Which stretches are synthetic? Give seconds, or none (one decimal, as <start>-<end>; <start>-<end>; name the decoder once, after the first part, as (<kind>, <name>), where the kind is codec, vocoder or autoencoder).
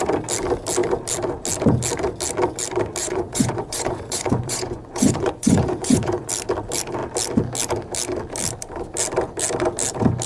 3.0-6.3 (vocoder, Vocos)